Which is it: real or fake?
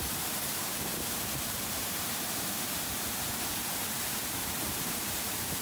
fake